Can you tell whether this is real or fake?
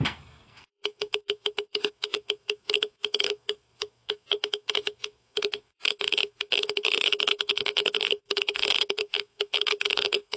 fake